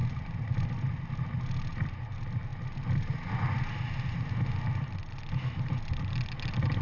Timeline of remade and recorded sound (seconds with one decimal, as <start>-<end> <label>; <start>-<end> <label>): 0.0-0.8 remade; 0.8-6.8 recorded